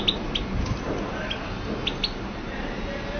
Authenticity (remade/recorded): recorded